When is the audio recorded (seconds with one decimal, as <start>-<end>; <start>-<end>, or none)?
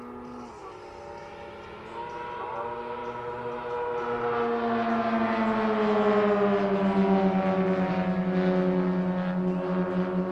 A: 0.0-10.3